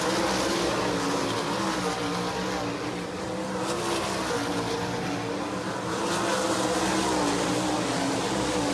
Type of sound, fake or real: real